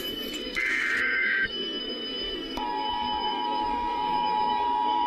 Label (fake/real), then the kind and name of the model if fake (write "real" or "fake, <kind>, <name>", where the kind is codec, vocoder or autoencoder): fake, codec, SNAC